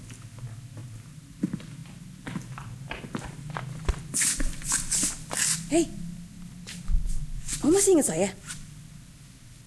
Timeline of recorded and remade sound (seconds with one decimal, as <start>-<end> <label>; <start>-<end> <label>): 0.0-9.7 recorded

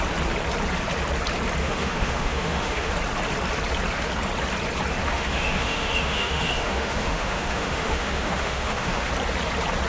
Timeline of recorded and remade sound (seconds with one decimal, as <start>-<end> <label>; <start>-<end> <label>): 0.0-1.6 recorded; 1.6-2.9 remade; 2.9-5.0 recorded; 5.0-9.1 remade; 9.1-9.9 recorded

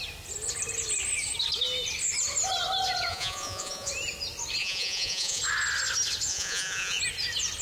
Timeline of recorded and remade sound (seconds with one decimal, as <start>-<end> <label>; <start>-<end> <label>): 0.0-3.1 recorded; 3.1-3.9 remade; 3.9-4.6 recorded; 4.6-5.4 remade; 5.4-6.3 recorded; 6.3-7.0 remade; 7.0-7.6 recorded

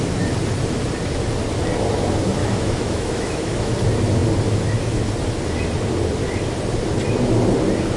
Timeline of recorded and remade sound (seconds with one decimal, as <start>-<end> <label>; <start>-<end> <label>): 0.0-2.4 recorded; 2.4-3.7 remade; 3.7-8.0 recorded

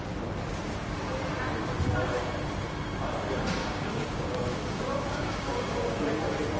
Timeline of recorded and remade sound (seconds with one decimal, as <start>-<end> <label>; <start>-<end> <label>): 0.0-3.6 recorded; 3.6-6.1 remade; 6.1-6.6 recorded

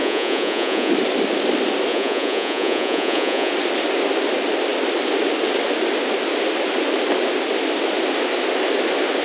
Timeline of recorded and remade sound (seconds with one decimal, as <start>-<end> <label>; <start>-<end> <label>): 0.0-0.9 remade; 0.9-1.9 recorded; 1.9-3.5 remade; 3.5-9.2 recorded